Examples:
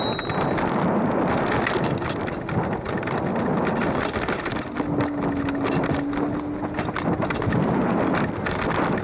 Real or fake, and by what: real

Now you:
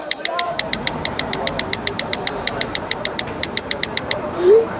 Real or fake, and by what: fake, vocoder, BigVGAN v2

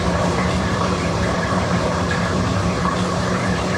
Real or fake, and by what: fake, vocoder, BigVGAN v2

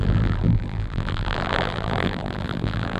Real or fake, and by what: fake, vocoder, BigVGAN v2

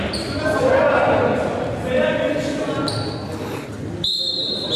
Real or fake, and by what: real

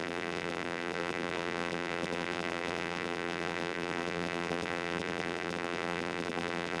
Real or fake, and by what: fake, vocoder, BigVGAN v2